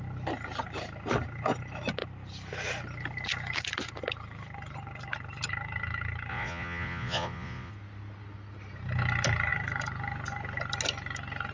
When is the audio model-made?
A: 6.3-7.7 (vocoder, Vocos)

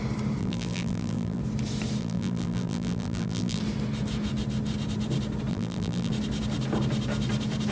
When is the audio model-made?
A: 0.4-1.4 (vocoder, BigVGAN v2); 2.0-3.6; 5.5-6.1

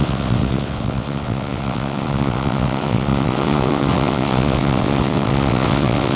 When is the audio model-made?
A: 0.0-6.2 (vocoder, WaveNeXt)

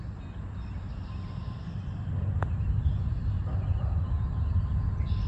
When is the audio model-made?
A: none